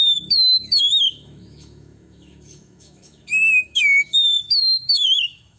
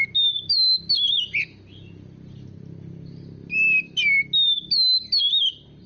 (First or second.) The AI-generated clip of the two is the first